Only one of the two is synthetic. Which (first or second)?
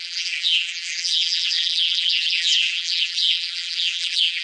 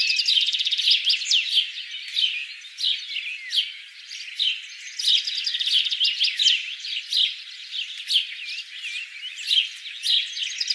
first